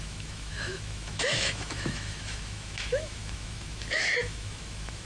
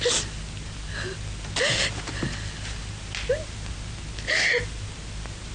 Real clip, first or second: second